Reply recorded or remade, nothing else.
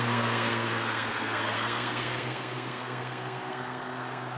remade